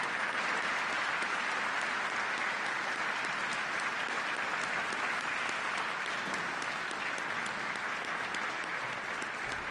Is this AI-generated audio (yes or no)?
no